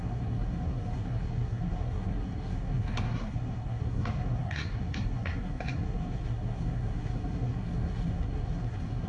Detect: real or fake fake